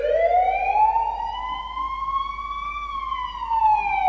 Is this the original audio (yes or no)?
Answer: yes